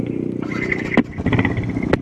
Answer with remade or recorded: recorded